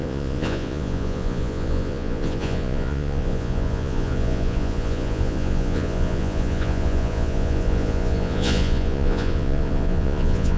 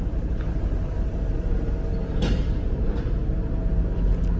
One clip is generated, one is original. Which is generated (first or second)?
first